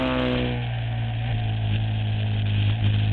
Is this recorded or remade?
recorded